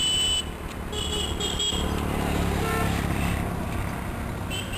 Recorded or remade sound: recorded